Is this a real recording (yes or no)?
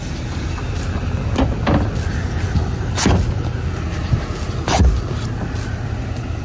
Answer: yes